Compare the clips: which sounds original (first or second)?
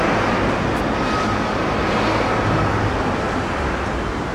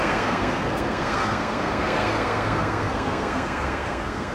first